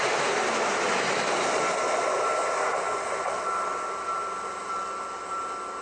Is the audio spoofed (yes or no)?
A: no